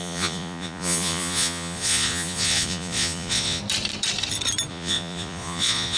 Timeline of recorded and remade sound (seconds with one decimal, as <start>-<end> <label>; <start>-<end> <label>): 0.0-3.6 remade; 3.6-4.7 recorded; 4.7-6.0 remade